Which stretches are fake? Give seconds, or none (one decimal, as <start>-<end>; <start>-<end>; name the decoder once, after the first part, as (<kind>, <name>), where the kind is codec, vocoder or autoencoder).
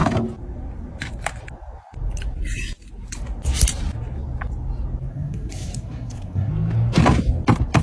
5.1-6.5 (codec, SNAC)